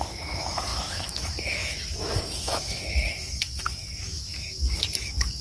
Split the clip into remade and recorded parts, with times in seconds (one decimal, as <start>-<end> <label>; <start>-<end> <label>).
0.0-5.4 remade